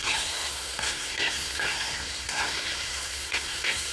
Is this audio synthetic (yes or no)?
yes